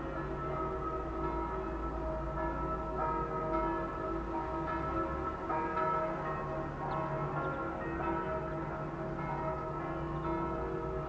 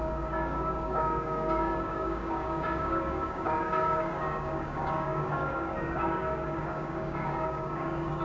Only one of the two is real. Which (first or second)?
first